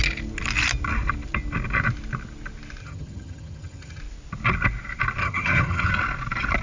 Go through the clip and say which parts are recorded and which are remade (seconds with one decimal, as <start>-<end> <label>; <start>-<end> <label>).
0.0-2.8 recorded; 2.8-4.0 remade; 4.0-5.2 recorded; 5.2-5.9 remade; 5.9-6.6 recorded